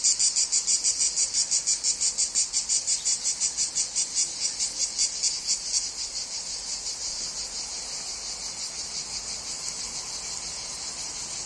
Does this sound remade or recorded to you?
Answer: recorded